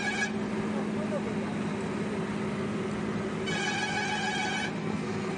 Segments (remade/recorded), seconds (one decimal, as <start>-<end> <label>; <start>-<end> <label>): 0.0-4.8 recorded; 4.8-5.4 remade